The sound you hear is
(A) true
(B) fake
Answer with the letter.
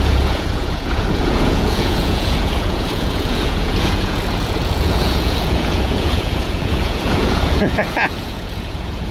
B